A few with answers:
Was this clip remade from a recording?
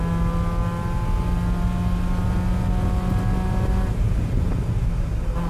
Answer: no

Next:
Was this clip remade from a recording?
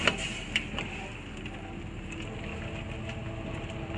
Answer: no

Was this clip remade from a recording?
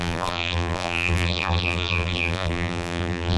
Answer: yes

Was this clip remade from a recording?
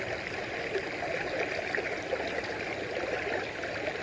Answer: no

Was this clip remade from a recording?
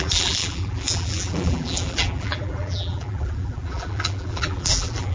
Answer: yes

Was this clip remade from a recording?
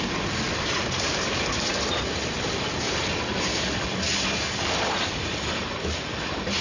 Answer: no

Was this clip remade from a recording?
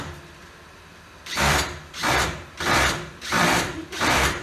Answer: yes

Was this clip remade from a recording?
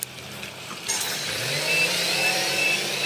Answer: yes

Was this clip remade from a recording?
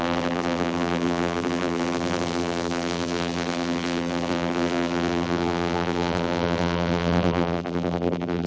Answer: yes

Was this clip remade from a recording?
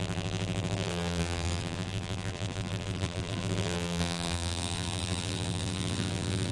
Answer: yes